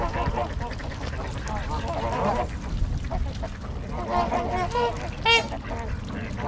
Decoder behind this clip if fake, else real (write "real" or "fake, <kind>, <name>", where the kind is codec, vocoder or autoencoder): real